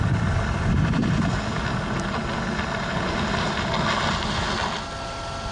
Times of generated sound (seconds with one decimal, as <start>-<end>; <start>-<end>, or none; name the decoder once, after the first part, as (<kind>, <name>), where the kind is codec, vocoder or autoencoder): none